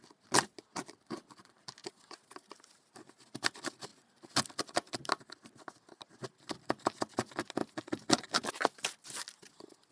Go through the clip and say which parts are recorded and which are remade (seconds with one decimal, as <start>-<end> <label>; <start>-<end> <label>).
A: 0.0-9.9 recorded